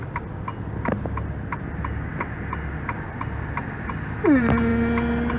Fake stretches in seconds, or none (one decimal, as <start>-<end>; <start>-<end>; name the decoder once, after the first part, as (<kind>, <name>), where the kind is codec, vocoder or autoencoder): none